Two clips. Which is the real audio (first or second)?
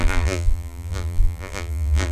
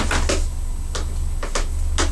second